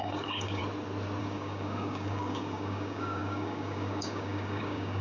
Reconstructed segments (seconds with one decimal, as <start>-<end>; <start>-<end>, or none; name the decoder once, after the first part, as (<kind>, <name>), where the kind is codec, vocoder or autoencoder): 0.0-0.6 (codec, DAC); 1.2-5.0